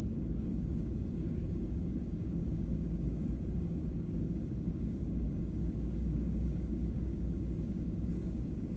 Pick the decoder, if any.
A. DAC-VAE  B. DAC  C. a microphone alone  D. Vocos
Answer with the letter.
B